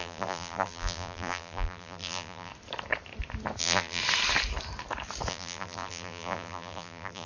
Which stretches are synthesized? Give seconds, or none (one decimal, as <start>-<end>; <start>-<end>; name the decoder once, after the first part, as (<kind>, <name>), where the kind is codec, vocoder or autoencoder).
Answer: 0.0-2.5 (vocoder, BigVGAN v2); 3.6-4.0; 5.3-7.3